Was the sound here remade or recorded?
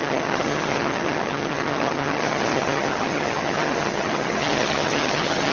remade